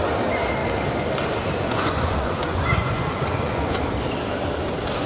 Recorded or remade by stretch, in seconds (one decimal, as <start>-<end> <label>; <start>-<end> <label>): 0.0-1.6 recorded; 1.6-3.8 remade; 3.8-5.1 recorded